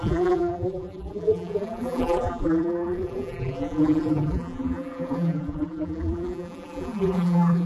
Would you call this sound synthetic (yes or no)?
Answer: yes